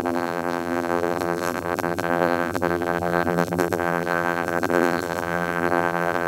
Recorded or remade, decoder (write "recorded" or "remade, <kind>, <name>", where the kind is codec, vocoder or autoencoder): remade, vocoder, BigVGAN v2